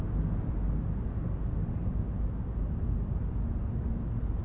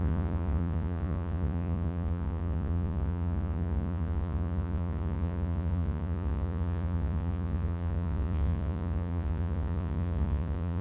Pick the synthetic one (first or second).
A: second